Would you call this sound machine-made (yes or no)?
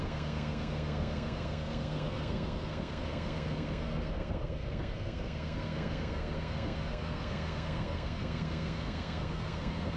yes